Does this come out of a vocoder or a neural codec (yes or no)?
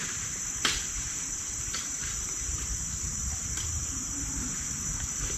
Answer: yes